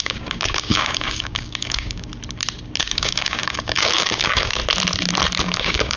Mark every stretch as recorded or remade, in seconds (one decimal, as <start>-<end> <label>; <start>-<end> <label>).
0.0-2.1 remade; 2.1-2.8 recorded; 2.8-4.6 remade; 4.6-5.4 recorded; 5.4-6.0 remade